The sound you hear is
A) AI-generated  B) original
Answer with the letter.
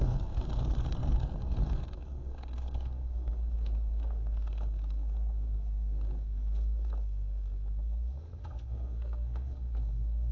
A